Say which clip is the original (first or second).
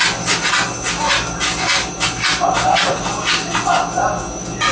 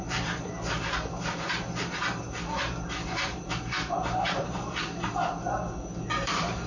first